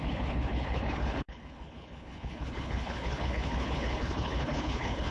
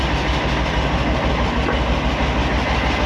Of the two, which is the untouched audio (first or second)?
second